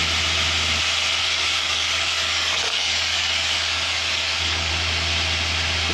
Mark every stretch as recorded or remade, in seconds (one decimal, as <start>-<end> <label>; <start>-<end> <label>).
0.0-1.2 recorded; 1.2-4.7 remade; 4.7-5.9 recorded